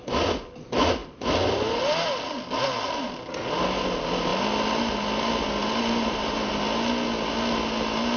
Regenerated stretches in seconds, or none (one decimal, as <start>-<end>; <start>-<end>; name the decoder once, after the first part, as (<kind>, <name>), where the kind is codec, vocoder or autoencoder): 5.6-6.5 (vocoder, BigVGAN v2)